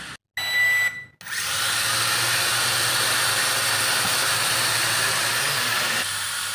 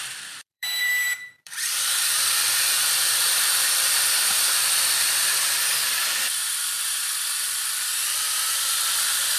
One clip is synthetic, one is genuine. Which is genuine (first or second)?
first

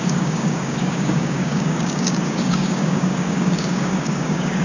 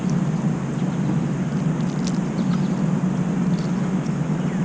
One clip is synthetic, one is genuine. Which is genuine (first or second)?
second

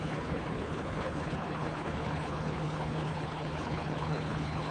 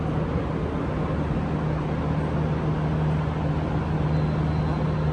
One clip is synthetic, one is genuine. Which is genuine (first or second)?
second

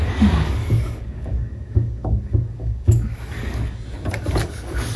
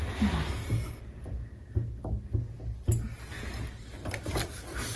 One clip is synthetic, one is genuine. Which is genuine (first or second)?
second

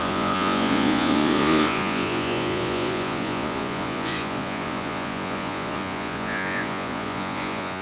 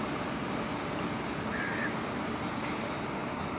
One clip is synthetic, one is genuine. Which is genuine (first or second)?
second